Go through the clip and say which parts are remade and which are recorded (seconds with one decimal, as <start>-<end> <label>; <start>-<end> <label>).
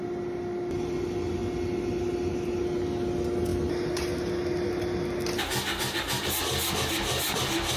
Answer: 0.0-7.8 recorded